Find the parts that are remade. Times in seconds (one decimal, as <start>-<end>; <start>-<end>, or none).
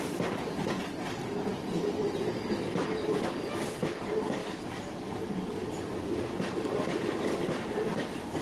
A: none